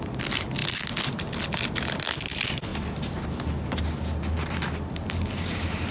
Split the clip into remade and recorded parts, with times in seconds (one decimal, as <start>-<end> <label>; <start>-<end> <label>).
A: 0.0-5.9 recorded

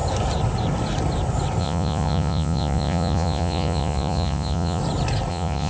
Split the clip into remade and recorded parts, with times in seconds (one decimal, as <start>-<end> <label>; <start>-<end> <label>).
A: 0.0-1.6 recorded; 1.6-4.8 remade; 4.8-5.3 recorded; 5.3-5.7 remade